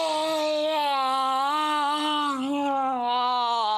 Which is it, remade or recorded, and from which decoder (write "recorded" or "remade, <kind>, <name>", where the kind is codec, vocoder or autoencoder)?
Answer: recorded